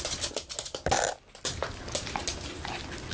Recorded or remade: recorded